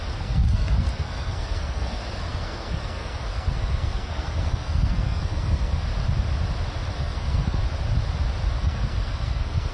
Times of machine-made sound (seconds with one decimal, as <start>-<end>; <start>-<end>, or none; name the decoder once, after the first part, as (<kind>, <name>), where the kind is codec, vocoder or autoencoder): 0.0-5.9 (codec, SNAC); 6.9-7.6; 8.6-9.7